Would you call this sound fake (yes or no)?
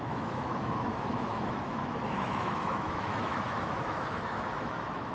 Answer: yes